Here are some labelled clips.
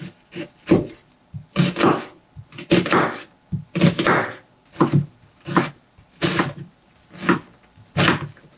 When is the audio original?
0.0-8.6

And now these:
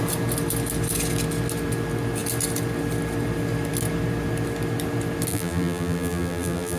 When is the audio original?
0.0-5.3

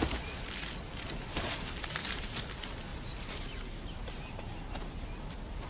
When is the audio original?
0.0-2.0; 2.5-2.9; 4.8-5.7